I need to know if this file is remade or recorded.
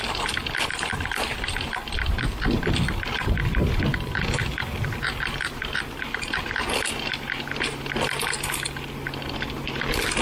recorded